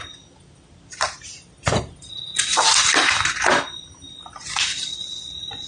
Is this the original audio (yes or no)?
yes